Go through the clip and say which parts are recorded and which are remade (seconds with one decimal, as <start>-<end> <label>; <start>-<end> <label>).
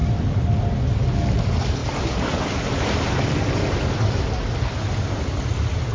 0.0-5.9 recorded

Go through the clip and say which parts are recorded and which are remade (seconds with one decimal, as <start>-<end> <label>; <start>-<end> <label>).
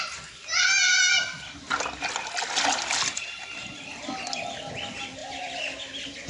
0.0-6.3 recorded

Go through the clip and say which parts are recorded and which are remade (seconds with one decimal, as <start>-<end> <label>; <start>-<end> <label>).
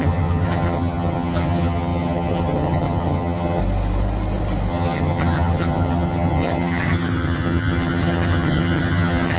0.0-3.6 remade; 3.6-4.7 recorded; 4.7-9.4 remade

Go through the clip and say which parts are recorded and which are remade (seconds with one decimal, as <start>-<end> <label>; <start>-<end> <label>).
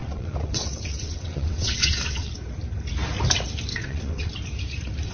0.0-2.3 remade; 2.3-3.7 recorded; 3.7-4.3 remade; 4.3-5.1 recorded